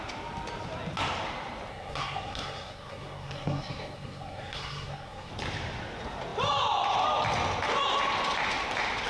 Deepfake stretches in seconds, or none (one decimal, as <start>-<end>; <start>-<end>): 1.7-5.3